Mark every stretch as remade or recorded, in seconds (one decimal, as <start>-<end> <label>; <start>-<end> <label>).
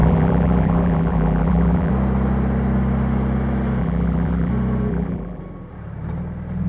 0.0-1.9 remade; 1.9-3.8 recorded; 3.8-4.5 remade; 4.5-4.9 recorded; 4.9-5.4 remade; 5.4-6.7 recorded